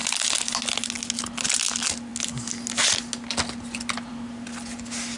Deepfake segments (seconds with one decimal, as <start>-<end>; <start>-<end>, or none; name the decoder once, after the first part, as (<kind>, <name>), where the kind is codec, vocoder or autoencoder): none